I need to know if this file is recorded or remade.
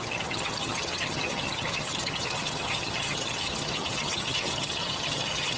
remade